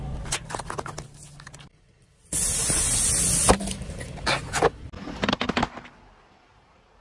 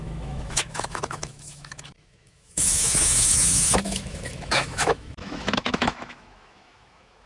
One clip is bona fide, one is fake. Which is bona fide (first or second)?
first